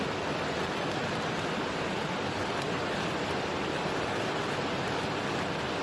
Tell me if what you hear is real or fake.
real